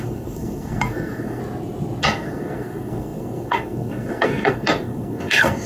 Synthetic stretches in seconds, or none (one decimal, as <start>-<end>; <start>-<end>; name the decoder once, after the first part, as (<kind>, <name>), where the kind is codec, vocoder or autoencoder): 0.0-1.4 (codec, SNAC); 2.0-5.7